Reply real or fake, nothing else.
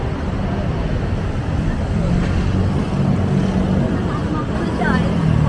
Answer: real